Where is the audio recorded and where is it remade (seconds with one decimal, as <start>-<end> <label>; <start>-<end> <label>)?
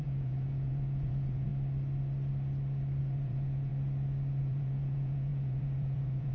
0.0-1.5 remade; 1.5-3.0 recorded; 3.0-3.7 remade; 3.7-4.4 recorded; 4.4-6.3 remade